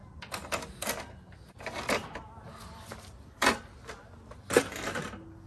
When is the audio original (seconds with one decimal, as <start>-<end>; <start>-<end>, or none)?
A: 0.0-5.5